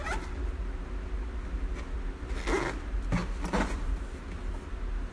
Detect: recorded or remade recorded